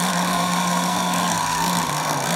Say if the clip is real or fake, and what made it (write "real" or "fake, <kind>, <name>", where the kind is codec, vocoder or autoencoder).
fake, codec, SNAC